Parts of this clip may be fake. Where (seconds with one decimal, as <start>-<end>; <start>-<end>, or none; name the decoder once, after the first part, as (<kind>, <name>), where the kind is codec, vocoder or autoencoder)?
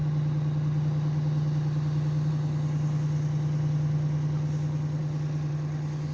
none